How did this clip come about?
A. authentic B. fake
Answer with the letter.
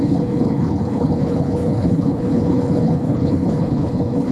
B